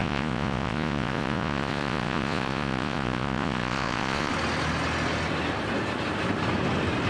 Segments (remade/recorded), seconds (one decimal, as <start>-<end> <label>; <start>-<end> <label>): 0.0-4.3 remade; 4.3-7.1 recorded